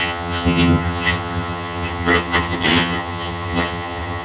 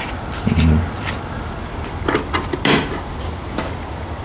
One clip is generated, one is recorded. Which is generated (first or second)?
first